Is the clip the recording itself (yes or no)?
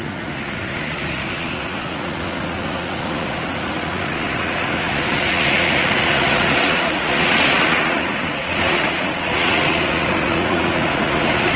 no